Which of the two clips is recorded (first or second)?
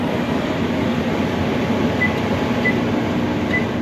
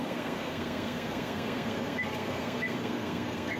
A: first